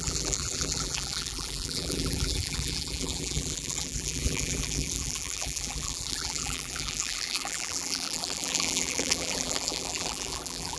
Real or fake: fake